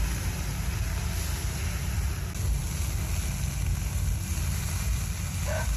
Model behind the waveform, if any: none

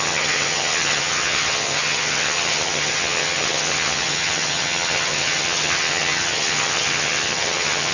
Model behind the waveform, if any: vocoder, HiFi-GAN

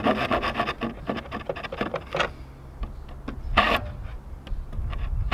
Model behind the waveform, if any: none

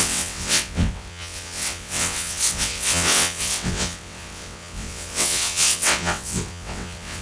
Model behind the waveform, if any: vocoder, WaveNeXt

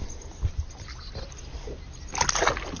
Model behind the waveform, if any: none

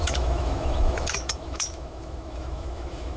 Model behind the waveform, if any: autoencoder, DAC-VAE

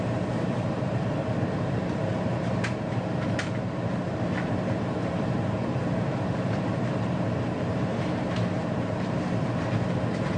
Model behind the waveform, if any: vocoder, BigVGAN v2